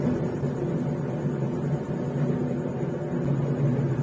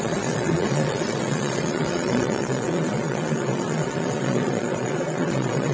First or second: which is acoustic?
first